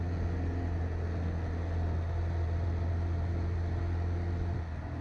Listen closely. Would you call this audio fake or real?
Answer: real